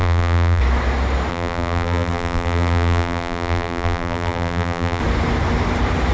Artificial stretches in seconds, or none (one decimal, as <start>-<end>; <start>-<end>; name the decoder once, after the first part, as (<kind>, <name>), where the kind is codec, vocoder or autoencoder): 0.0-0.6 (vocoder, BigVGAN v2); 1.3-5.0